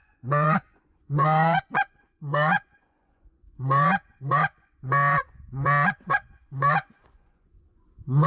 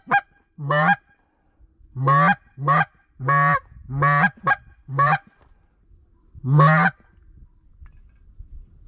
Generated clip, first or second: first